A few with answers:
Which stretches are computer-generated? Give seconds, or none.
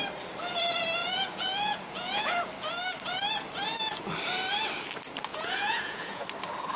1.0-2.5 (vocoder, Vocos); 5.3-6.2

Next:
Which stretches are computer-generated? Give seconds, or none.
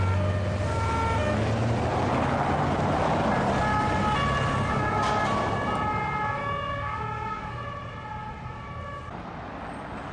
6.4-7.5 (codec, DAC)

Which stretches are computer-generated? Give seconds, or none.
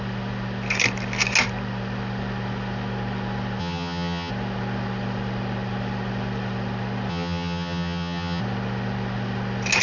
3.6-4.3 (vocoder, HiFi-GAN); 7.1-8.4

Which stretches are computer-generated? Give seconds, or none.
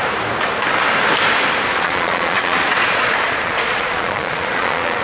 1.7-5.0 (vocoder, Vocos)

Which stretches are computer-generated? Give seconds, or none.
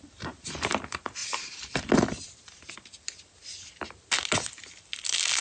1.2-1.9 (vocoder, BigVGAN v2)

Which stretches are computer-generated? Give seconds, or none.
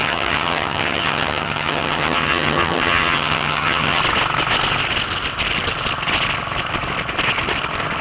0.0-4.0 (vocoder, HiFi-GAN)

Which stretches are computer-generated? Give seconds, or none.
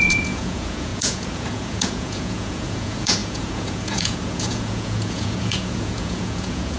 0.0-6.8 (vocoder, Vocos)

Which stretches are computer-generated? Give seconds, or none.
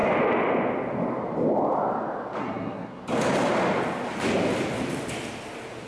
2.4-3.0 (codec, SNAC)